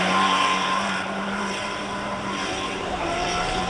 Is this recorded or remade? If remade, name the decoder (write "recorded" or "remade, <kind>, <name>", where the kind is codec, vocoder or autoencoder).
remade, vocoder, BigVGAN v2